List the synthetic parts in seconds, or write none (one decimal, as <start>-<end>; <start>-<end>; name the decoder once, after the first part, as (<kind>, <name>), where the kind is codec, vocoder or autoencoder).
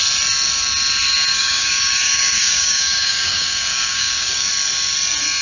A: 1.3-4.5 (codec, DAC)